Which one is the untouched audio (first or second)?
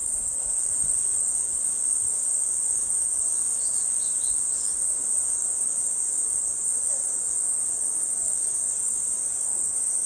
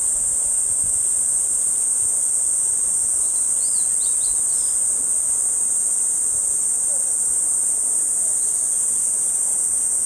second